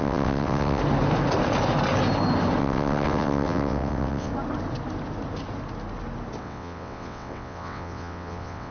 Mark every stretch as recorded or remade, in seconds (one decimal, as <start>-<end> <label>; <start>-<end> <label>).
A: 0.0-0.8 remade; 0.8-2.6 recorded; 2.6-4.3 remade; 4.3-6.4 recorded; 6.4-8.7 remade